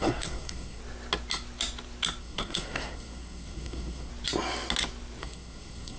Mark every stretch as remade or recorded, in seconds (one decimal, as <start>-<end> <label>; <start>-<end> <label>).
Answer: 0.0-0.8 remade; 0.8-2.2 recorded; 2.2-4.1 remade; 4.1-5.2 recorded; 5.2-6.0 remade